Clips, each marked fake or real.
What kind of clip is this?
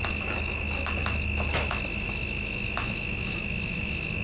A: fake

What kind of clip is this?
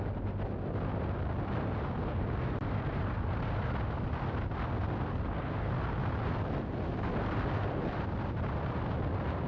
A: real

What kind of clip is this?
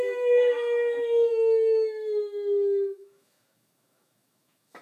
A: fake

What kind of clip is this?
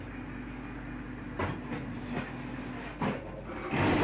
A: real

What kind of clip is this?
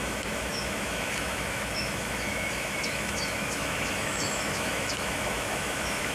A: fake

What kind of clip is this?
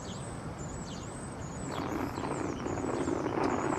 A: real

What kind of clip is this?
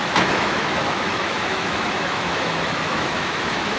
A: fake